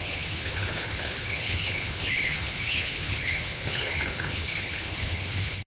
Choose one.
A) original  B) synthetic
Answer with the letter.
B